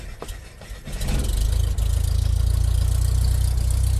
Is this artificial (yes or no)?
no